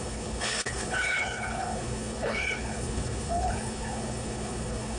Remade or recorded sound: remade